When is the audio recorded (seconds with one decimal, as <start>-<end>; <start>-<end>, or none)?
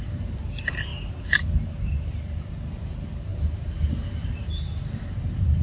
0.9-1.8; 3.3-4.8